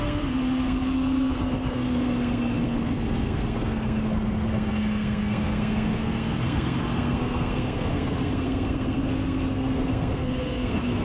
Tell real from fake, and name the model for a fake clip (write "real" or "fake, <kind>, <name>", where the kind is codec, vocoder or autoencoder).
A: fake, codec, SNAC